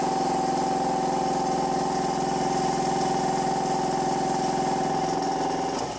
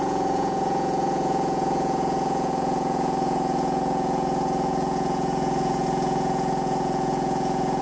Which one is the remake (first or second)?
second